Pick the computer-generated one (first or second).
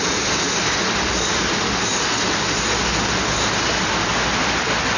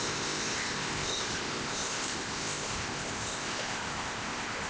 second